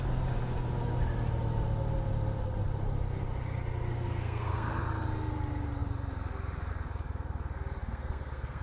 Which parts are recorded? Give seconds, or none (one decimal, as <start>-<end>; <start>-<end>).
0.0-3.9; 4.8-7.8